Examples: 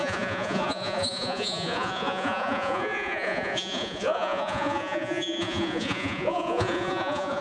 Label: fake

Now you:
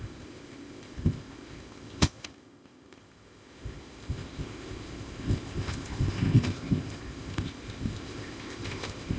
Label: fake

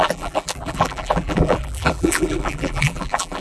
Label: fake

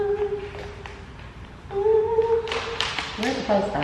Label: real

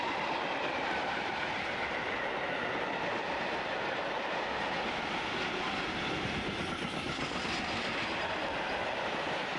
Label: real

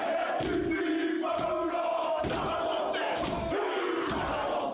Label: real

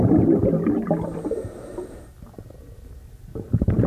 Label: real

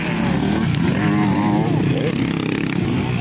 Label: real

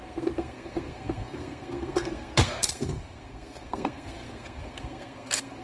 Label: fake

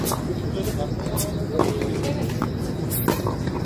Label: real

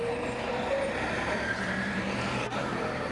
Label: fake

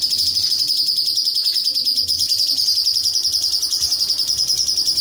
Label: fake